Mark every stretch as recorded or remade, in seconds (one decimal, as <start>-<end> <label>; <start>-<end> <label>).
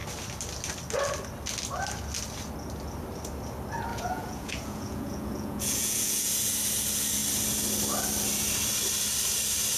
0.0-3.9 recorded; 3.9-6.3 remade; 6.3-9.8 recorded